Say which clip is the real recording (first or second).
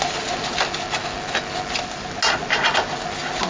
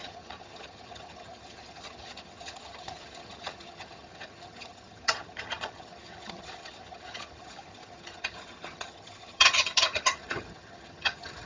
first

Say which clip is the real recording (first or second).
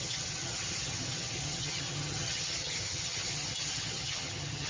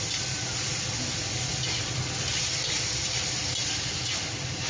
second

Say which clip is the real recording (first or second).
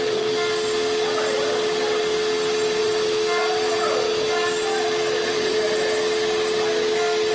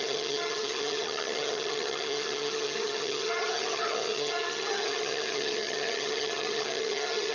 first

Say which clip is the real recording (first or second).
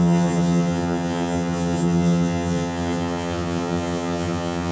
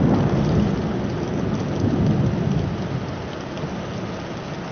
second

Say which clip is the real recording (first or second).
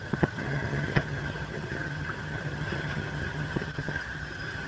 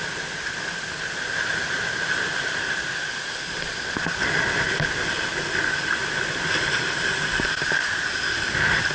second